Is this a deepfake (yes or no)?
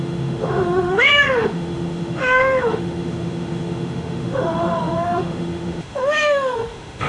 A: yes